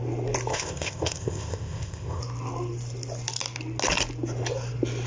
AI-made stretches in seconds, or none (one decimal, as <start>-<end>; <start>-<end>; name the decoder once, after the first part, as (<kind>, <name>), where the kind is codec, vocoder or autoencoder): 0.5-2.2 (codec, ZipCodec)